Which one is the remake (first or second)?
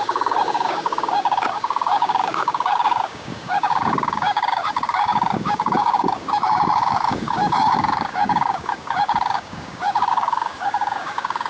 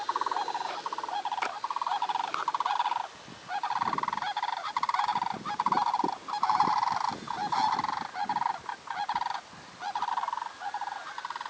first